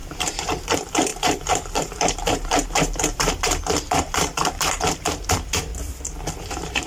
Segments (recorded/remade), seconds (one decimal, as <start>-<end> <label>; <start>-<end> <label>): 0.0-0.7 recorded; 0.7-5.7 remade; 5.7-6.3 recorded; 6.3-6.9 remade